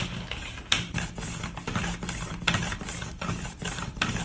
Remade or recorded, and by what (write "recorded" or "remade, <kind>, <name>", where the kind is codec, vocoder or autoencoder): recorded